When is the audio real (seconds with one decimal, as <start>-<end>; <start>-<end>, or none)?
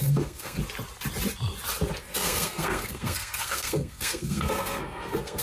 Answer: 0.6-2.0